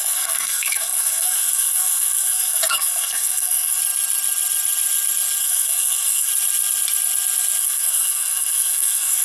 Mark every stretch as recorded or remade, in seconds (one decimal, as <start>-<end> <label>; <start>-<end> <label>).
0.0-3.8 remade; 3.8-5.4 recorded; 5.4-6.3 remade; 6.3-7.6 recorded; 7.6-9.2 remade